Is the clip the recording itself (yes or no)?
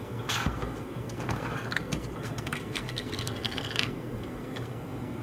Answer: no